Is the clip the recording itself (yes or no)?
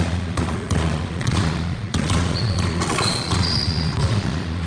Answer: no